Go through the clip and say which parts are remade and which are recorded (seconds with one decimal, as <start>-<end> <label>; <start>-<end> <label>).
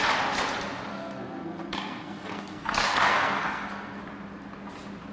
0.0-0.9 recorded; 0.9-4.0 remade; 4.0-5.1 recorded